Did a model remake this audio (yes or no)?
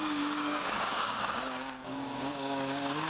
yes